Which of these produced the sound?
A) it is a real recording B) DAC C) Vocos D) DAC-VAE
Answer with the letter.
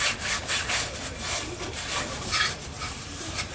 A